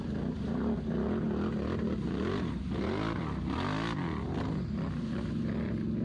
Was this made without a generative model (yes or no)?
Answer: yes